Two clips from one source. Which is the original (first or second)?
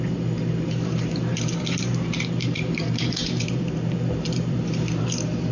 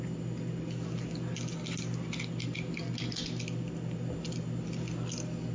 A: second